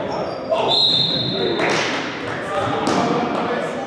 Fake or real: real